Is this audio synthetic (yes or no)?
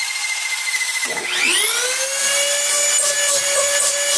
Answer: no